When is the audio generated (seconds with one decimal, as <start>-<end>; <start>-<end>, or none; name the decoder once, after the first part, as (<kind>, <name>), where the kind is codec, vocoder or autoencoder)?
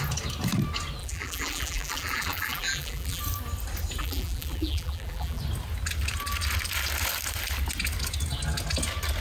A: 1.0-3.2 (vocoder, BigVGAN v2); 4.0-5.4